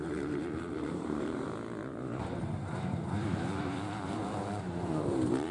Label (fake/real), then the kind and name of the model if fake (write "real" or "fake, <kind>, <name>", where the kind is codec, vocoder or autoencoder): fake, vocoder, BigVGAN v2